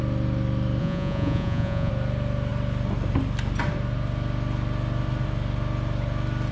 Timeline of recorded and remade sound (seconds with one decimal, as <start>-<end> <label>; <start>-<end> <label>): 0.0-0.8 recorded; 0.8-1.9 remade; 1.9-6.5 recorded